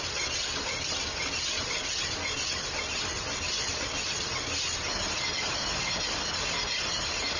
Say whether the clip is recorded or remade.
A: recorded